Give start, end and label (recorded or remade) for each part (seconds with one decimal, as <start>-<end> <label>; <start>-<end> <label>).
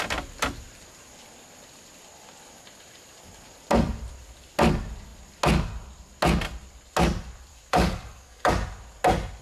0.0-7.5 recorded; 7.5-8.5 remade; 8.5-9.4 recorded